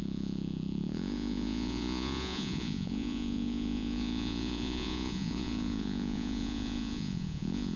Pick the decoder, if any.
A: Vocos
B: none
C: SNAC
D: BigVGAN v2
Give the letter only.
A